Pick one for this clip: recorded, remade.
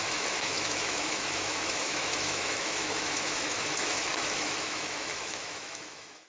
remade